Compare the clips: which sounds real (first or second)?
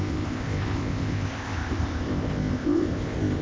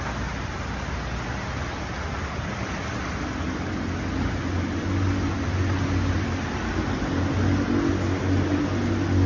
second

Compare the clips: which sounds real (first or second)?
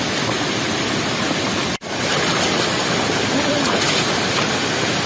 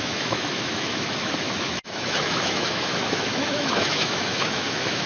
first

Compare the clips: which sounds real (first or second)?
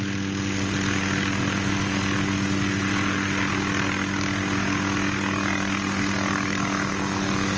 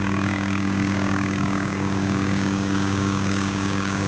first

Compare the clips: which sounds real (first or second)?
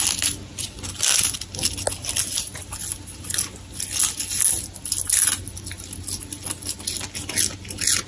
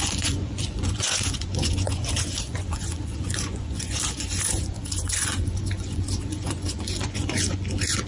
first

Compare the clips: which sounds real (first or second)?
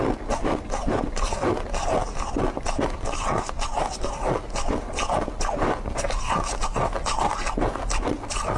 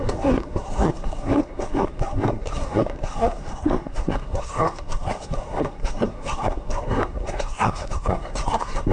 first